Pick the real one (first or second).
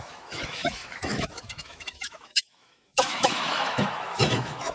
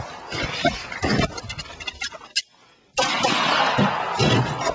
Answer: second